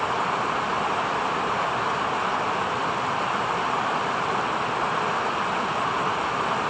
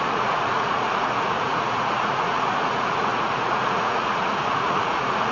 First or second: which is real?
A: first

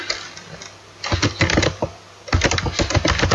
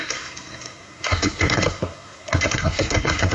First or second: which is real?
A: first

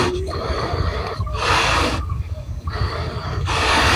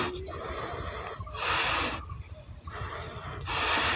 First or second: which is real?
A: second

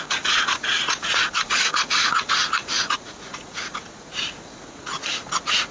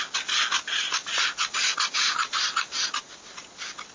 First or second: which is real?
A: second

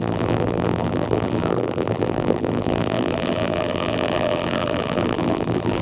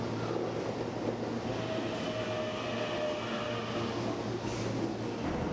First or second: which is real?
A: second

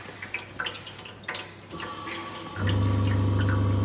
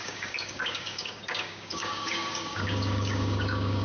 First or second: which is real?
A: first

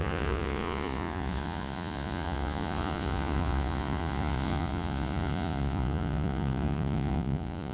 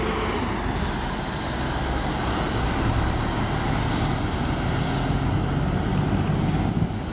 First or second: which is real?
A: second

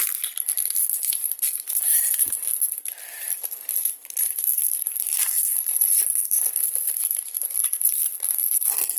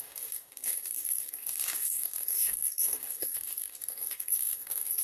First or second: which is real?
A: first